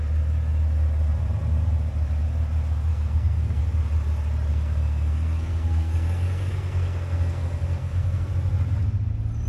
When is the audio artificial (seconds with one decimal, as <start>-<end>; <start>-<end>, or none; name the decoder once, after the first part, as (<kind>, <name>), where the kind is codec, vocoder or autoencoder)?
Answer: 2.9-3.6 (codec, SNAC); 4.5-8.3